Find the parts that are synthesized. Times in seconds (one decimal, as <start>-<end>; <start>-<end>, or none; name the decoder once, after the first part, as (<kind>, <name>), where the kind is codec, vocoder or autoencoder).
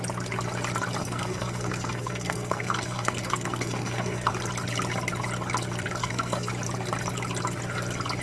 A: 1.0-4.3 (codec, SNAC); 6.0-6.5